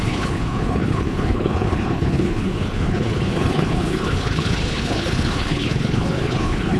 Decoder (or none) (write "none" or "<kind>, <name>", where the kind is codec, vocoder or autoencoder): codec, HILCodec